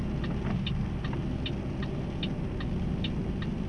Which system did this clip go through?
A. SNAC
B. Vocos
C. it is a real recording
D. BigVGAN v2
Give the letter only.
C